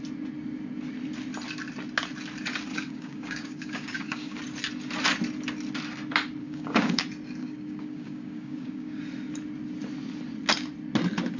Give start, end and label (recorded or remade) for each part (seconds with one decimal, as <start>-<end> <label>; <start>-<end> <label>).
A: 0.0-2.7 recorded; 2.7-4.4 remade; 4.4-6.4 recorded; 6.4-7.0 remade; 7.0-7.4 recorded; 7.4-9.0 remade; 9.0-11.4 recorded